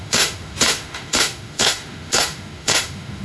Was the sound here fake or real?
fake